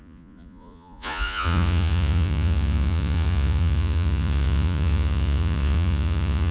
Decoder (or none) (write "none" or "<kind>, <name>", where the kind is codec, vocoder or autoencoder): vocoder, Vocos